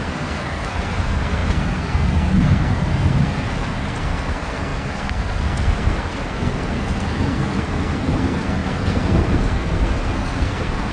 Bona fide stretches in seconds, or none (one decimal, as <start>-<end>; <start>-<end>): none